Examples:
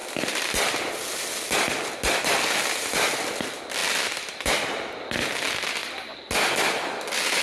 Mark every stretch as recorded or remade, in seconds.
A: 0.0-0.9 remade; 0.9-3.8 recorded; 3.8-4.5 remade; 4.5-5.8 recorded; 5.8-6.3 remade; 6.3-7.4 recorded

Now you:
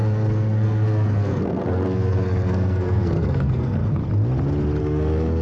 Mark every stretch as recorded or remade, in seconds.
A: 0.0-3.8 remade; 3.8-4.8 recorded; 4.8-5.4 remade

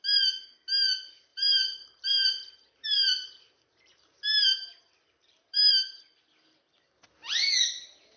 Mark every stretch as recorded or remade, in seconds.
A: 0.0-1.3 recorded; 1.3-5.7 remade; 5.7-7.2 recorded; 7.2-8.2 remade

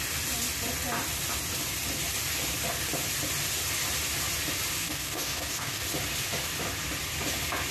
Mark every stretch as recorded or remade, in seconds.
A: 0.0-4.8 recorded; 4.8-5.8 remade; 5.8-7.7 recorded